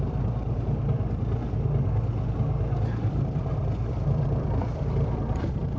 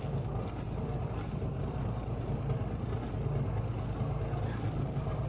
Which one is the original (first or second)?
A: second